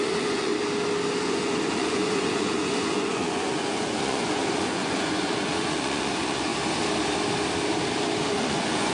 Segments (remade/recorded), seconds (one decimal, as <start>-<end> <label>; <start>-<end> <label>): 0.0-0.5 remade; 0.5-1.2 recorded; 1.2-6.5 remade; 6.5-8.3 recorded; 8.3-8.9 remade